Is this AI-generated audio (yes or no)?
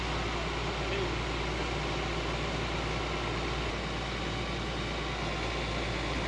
no